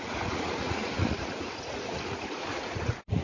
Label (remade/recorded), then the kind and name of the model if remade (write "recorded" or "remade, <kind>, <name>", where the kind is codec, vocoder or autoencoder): remade, vocoder, Vocos